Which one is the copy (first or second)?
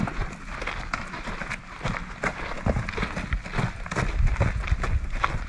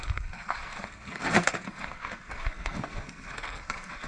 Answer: second